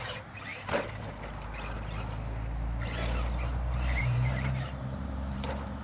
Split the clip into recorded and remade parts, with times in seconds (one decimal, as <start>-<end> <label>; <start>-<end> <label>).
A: 0.0-0.5 remade; 0.5-4.0 recorded; 4.0-5.8 remade